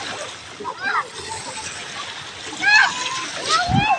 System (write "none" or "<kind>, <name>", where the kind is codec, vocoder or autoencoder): none